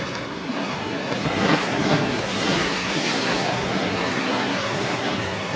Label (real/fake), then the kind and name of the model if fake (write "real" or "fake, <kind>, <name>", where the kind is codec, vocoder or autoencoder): fake, codec, SNAC